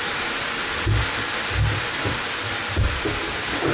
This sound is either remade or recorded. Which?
recorded